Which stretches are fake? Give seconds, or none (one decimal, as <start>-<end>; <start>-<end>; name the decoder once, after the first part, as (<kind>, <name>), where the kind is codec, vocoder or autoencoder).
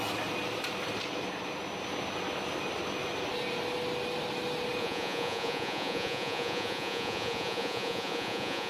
4.8-8.7 (vocoder, Vocos)